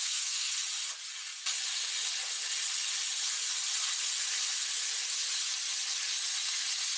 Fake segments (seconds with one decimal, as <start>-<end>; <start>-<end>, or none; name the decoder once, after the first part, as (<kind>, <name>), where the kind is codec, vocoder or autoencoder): 0.0-0.6 (autoencoder, DAC-VAE)